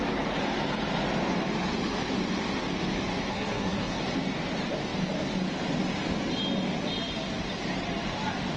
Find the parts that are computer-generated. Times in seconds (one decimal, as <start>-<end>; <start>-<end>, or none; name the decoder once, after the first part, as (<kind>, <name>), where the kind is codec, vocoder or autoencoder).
3.3-4.0 (codec, SNAC)